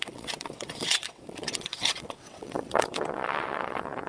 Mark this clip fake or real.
fake